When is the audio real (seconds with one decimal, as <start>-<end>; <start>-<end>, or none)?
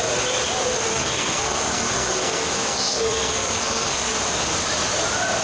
0.0-0.9; 4.1-5.4